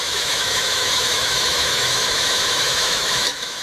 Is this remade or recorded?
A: remade